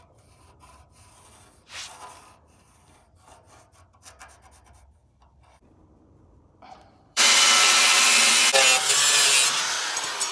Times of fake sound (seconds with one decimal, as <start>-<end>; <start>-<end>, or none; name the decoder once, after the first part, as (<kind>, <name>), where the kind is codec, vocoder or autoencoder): 5.0-8.3 (vocoder, BigVGAN v2)